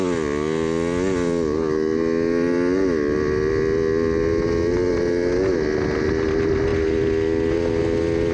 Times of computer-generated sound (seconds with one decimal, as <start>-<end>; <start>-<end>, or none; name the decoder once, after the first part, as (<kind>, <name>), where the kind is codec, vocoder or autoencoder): none